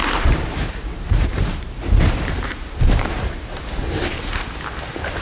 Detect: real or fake fake